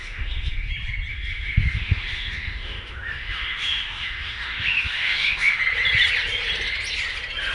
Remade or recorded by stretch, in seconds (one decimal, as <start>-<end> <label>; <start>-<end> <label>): 0.0-0.7 remade; 0.7-1.1 recorded; 1.1-5.6 remade; 5.6-7.5 recorded